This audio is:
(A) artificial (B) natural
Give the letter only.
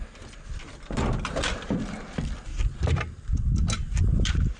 B